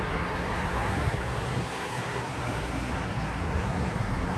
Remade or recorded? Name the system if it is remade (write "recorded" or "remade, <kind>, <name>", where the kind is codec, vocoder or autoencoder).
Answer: remade, codec, SNAC